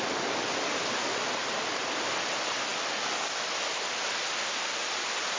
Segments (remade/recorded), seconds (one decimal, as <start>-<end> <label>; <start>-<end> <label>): 0.0-5.4 recorded